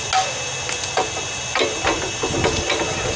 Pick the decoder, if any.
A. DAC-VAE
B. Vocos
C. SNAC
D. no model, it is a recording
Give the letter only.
D